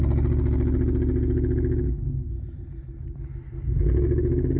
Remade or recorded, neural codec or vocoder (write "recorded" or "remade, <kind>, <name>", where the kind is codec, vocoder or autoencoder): recorded